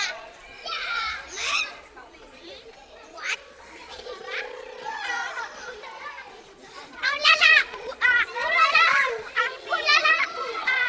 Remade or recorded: remade